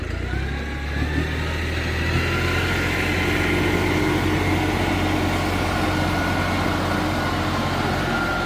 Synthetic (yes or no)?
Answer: no